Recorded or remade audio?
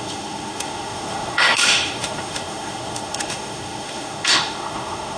remade